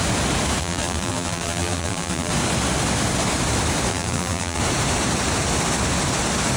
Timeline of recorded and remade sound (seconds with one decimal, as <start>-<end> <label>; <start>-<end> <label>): 0.0-0.6 recorded; 0.6-2.3 remade; 2.3-3.9 recorded; 3.9-4.6 remade; 4.6-6.6 recorded